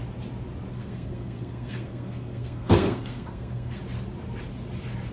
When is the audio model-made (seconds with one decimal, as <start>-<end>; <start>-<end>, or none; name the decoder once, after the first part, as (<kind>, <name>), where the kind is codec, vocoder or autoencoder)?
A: 0.7-3.8 (codec, SNAC)